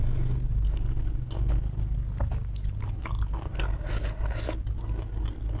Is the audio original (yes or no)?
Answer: yes